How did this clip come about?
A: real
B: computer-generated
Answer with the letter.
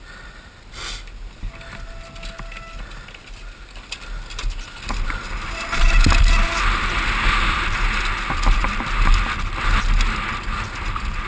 A